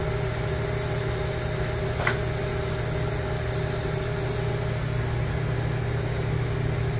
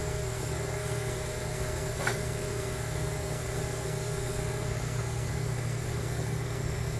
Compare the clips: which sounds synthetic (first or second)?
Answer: second